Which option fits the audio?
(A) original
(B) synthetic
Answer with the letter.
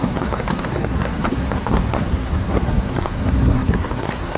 B